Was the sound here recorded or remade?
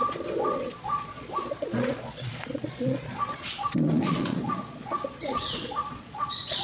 remade